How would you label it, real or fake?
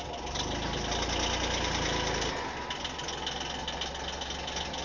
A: real